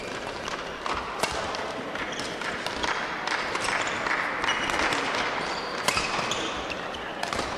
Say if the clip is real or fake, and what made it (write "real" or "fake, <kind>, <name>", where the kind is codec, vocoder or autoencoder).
real